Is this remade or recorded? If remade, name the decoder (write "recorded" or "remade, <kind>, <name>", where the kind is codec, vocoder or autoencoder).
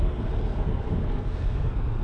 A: remade, codec, SNAC